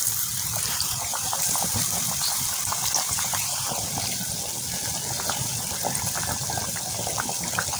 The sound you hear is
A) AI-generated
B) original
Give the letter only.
B